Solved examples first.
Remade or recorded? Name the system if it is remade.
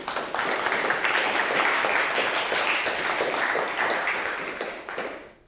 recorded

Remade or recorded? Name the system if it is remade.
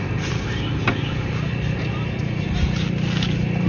recorded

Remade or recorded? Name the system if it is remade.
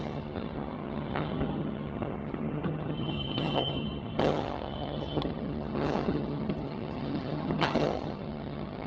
remade, vocoder, HiFi-GAN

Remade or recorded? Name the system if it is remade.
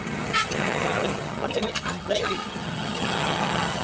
remade, vocoder, HiFi-GAN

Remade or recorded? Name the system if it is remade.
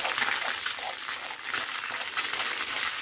recorded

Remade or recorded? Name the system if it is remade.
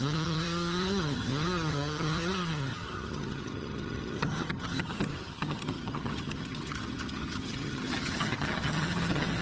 remade, vocoder, HiFi-GAN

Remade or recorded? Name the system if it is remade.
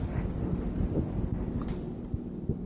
recorded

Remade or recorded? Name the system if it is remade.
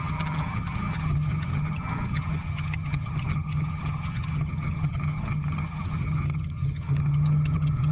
remade, vocoder, HiFi-GAN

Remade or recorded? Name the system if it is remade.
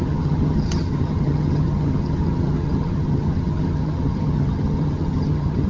remade, vocoder, HiFi-GAN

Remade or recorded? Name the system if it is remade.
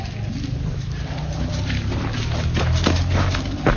recorded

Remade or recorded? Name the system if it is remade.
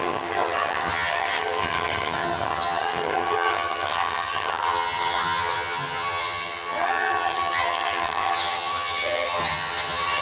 remade, vocoder, HiFi-GAN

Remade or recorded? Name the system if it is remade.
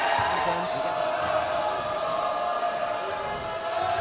recorded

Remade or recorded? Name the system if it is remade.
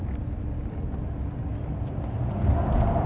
recorded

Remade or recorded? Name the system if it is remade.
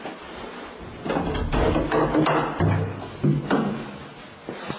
recorded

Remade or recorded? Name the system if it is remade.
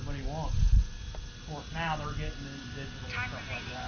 recorded